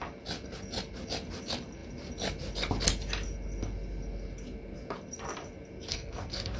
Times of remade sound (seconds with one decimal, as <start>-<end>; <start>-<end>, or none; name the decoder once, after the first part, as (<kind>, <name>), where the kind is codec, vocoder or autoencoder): 5.9-6.6 (codec, SNAC)